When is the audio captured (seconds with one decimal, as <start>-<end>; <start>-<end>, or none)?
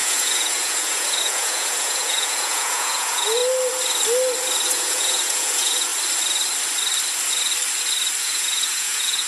3.4-4.7; 5.9-8.2